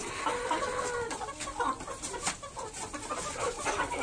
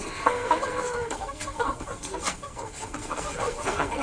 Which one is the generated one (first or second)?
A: second